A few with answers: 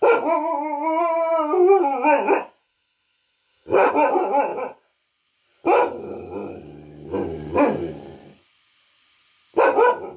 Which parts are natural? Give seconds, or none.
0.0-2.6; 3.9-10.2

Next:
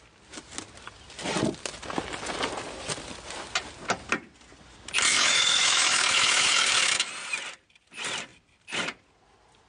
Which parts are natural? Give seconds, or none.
0.0-5.1; 7.1-9.7

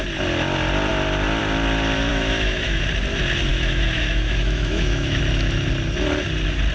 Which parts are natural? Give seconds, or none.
0.0-2.1; 2.8-3.5; 5.2-6.7

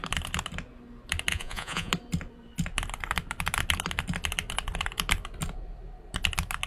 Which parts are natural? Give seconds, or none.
0.0-1.3; 1.9-6.7

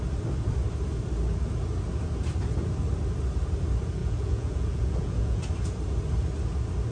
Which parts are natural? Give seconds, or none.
0.0-4.0; 5.4-6.9

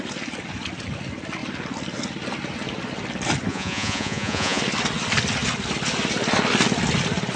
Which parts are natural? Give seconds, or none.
0.0-3.5; 4.6-7.4